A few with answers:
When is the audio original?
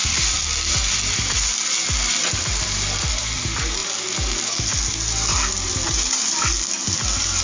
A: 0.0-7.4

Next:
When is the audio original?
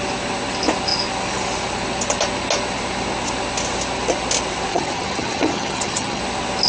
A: 0.0-4.7; 6.2-6.7